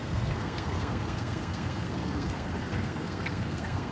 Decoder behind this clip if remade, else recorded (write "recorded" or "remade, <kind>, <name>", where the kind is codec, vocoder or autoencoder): remade, codec, SNAC